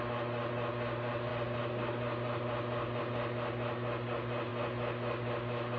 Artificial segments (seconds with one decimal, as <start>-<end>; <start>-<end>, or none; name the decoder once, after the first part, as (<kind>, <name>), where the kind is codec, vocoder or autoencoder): 1.3-3.0 (vocoder, BigVGAN v2)